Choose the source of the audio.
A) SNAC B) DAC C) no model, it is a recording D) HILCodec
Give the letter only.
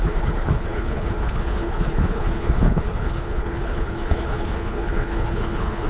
D